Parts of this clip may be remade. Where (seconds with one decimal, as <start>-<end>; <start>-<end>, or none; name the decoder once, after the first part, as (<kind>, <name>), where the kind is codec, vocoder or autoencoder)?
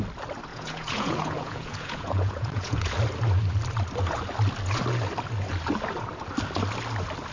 0.5-2.9 (vocoder, Vocos)